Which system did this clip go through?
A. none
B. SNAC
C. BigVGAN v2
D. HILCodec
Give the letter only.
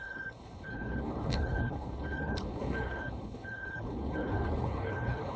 D